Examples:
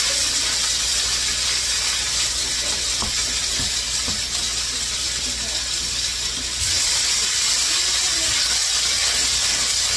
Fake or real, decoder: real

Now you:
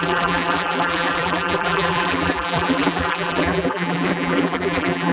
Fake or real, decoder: fake, vocoder, BigVGAN v2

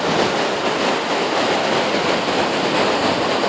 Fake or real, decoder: real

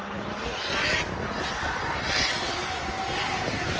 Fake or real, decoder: real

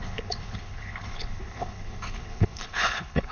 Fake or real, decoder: fake, codec, HILCodec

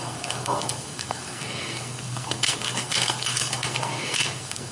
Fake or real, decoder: fake, codec, SNAC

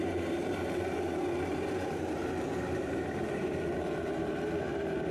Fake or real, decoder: fake, vocoder, BigVGAN v2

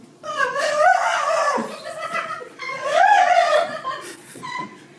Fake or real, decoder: fake, vocoder, Vocos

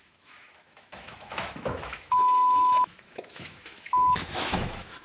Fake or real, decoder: fake, autoencoder, DAC-VAE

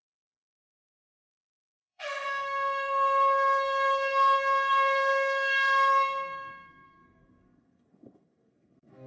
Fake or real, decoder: fake, codec, SNAC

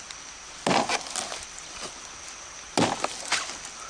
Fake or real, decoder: real